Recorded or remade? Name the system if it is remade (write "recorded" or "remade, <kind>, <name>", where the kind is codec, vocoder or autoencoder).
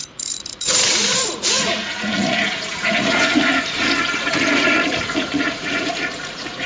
remade, vocoder, Vocos